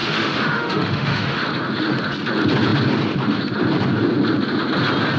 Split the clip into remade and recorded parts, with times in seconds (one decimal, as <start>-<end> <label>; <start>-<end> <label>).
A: 0.0-1.4 remade; 1.4-5.2 recorded